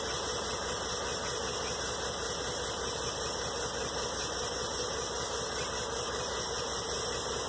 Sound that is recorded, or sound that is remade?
recorded